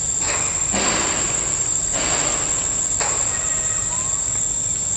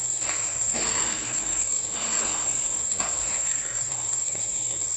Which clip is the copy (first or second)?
second